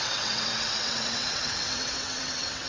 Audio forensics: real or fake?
fake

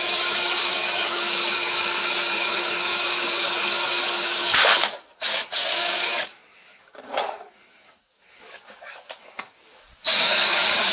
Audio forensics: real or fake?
fake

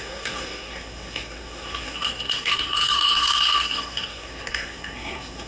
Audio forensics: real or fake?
fake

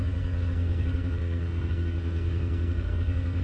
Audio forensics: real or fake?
fake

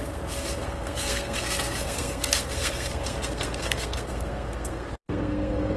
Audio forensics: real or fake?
fake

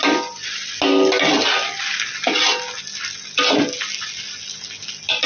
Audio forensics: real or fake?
real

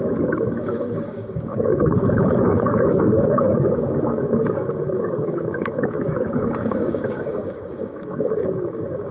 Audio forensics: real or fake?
fake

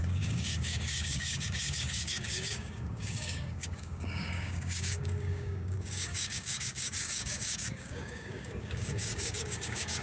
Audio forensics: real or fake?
fake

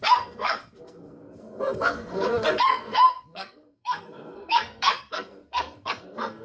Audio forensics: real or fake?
fake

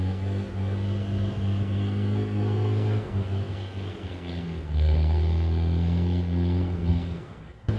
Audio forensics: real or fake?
fake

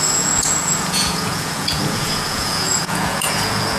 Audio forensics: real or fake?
fake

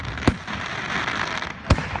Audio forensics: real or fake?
real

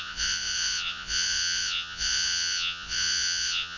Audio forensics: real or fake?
fake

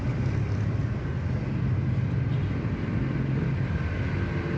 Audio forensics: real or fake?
real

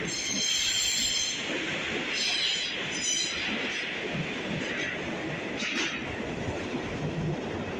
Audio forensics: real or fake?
real